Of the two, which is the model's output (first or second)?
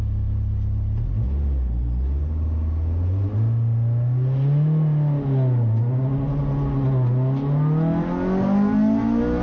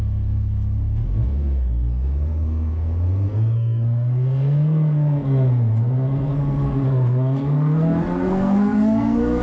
second